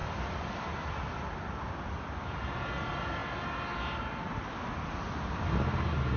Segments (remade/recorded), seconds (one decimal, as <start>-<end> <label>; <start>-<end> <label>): 0.0-6.2 recorded